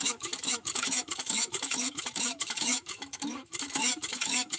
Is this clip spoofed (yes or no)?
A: yes